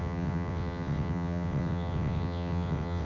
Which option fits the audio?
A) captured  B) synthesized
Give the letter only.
B